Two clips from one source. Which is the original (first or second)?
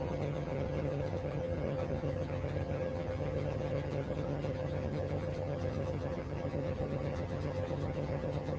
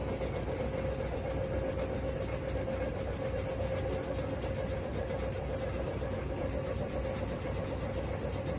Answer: second